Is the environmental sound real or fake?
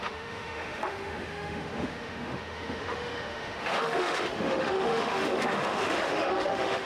fake